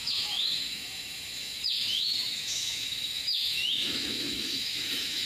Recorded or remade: remade